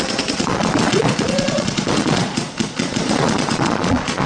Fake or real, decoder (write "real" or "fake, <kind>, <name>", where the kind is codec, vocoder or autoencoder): fake, vocoder, Vocos